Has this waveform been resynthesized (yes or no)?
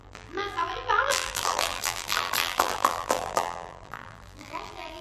yes